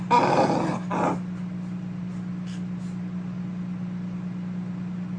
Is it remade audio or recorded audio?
recorded